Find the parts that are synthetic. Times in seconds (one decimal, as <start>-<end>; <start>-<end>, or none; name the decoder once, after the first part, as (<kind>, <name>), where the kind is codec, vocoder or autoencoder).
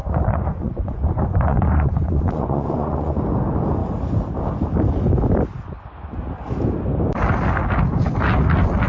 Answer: 0.0-3.2 (vocoder, Vocos)